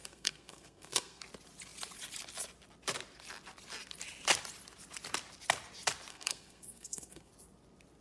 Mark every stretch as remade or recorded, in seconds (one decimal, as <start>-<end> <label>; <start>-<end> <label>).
0.0-1.2 remade; 1.2-6.1 recorded; 6.1-7.3 remade; 7.3-8.0 recorded